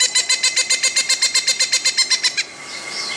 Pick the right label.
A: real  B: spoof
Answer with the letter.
A